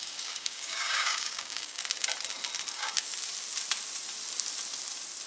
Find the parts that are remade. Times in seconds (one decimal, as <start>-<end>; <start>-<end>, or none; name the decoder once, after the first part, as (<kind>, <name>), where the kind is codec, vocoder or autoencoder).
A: 0.0-1.8 (codec, DAC); 2.7-3.1